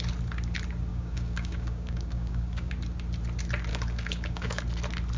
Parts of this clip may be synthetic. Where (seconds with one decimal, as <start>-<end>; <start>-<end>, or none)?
0.9-2.7; 3.7-4.6